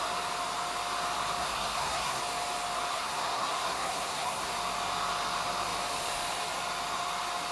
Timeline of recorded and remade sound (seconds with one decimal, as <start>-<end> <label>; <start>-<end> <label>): 0.0-1.4 recorded; 1.4-2.2 remade; 2.2-2.9 recorded; 2.9-4.5 remade; 4.5-7.5 recorded